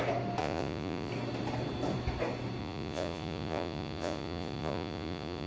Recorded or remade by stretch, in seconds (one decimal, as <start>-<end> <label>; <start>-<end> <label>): 0.0-0.4 recorded; 0.4-1.1 remade; 1.1-2.6 recorded; 2.6-5.5 remade